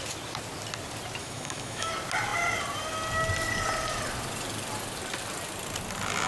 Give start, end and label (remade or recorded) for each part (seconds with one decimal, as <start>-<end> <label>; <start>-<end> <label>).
0.0-1.2 recorded; 1.2-1.9 remade; 1.9-6.3 recorded